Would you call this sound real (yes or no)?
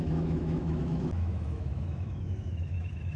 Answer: no